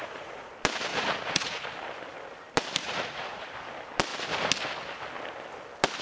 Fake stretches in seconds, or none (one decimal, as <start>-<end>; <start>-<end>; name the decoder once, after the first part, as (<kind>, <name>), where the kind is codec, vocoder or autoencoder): 0.0-0.5 (vocoder, Vocos); 0.9-1.6; 2.8-3.4

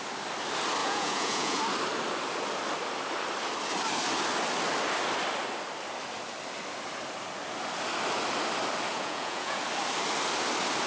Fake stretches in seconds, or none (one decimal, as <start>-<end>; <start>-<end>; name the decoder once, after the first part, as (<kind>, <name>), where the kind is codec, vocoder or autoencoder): 0.8-1.6 (vocoder, Vocos); 8.9-9.6

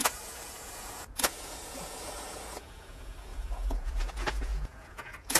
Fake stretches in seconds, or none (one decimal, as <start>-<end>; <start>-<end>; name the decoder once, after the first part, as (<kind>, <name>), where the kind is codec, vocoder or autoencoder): 0.0-5.4 (vocoder, Vocos)

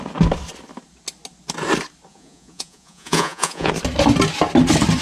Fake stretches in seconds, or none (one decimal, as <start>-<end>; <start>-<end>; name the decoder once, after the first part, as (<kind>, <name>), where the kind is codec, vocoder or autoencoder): 2.1-3.7 (vocoder, Vocos)

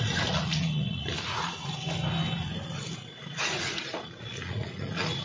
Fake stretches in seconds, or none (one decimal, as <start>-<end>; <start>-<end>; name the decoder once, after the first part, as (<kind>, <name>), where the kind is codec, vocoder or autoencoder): 0.0-1.8 (vocoder, Vocos); 3.2-5.2

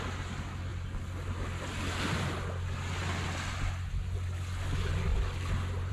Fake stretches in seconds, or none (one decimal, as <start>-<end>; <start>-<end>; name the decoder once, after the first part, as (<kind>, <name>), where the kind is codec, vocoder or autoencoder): none